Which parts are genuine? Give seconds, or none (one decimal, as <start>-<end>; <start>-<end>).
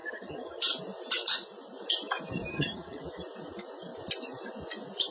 0.6-2.5; 3.0-5.1